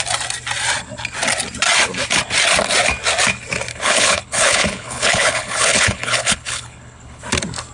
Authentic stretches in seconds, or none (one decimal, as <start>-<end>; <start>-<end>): 0.0-3.7; 7.2-7.7